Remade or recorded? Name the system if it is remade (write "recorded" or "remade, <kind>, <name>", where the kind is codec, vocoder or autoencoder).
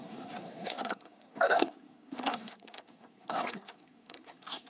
remade, codec, SNAC